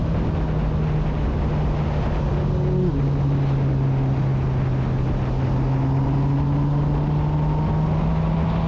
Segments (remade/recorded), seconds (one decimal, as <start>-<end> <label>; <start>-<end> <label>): 0.0-8.7 recorded